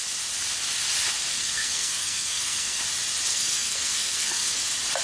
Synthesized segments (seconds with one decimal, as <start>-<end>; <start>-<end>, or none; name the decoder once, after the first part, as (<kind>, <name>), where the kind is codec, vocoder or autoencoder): 1.3-2.8 (codec, SNAC); 3.3-4.6